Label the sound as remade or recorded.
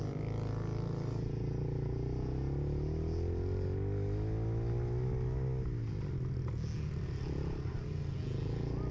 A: recorded